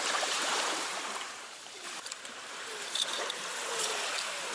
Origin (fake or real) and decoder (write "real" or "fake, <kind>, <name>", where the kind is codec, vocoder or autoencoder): fake, vocoder, BigVGAN v2